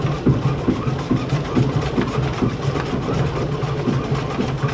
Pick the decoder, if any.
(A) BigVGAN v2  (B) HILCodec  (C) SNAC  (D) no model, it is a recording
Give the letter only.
D